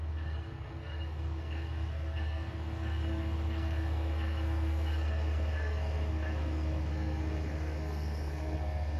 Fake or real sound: fake